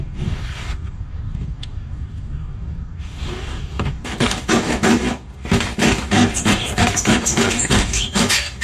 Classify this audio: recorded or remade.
remade